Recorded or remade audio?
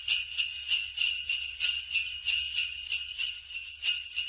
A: recorded